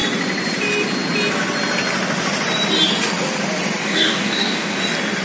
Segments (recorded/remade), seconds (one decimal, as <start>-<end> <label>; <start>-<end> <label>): 0.0-3.8 recorded; 3.8-4.8 remade; 4.8-5.2 recorded